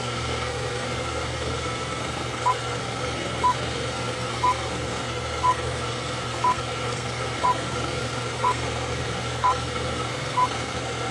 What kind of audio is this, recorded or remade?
remade